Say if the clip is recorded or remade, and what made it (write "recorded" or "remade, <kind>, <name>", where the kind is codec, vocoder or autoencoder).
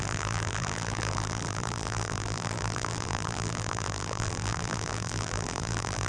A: remade, vocoder, BigVGAN v2